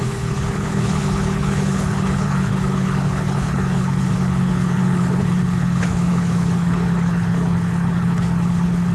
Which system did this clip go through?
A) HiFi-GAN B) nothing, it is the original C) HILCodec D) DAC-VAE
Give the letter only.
C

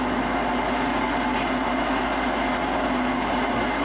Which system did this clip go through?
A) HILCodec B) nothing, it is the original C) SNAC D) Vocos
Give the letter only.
B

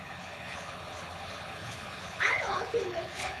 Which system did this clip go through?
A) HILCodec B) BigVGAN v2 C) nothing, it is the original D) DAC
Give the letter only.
A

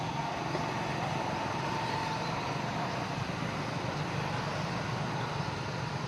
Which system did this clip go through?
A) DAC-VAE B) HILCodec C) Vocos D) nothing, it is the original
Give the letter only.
D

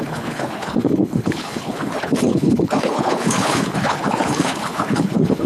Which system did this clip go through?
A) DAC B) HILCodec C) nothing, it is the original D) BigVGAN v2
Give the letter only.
B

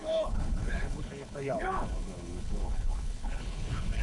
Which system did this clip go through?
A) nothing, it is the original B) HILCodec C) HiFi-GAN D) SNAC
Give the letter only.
B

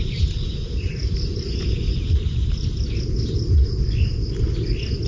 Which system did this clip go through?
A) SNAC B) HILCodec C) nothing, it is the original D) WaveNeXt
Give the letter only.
C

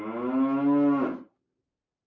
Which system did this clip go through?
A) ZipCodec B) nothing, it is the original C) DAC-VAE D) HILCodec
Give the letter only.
B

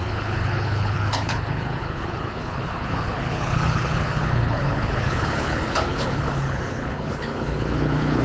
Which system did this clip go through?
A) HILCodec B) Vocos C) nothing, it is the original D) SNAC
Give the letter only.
A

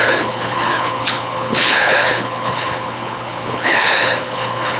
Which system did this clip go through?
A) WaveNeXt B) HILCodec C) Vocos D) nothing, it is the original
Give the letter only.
B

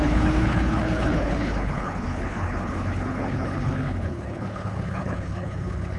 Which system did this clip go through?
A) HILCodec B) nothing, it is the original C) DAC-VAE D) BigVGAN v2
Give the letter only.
A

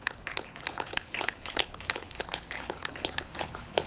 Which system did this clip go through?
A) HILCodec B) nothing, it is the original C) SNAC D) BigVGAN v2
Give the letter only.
A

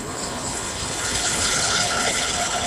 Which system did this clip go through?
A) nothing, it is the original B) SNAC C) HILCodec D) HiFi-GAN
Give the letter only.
C